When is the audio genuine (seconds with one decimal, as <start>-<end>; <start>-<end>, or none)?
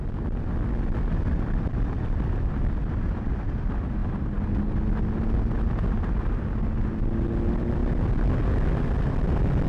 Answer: 0.0-9.7